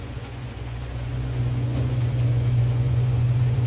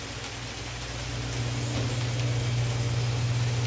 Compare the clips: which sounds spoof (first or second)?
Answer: first